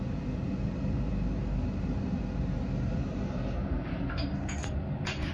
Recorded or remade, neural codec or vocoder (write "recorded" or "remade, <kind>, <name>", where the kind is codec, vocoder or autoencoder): recorded